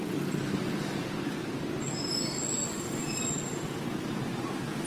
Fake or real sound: real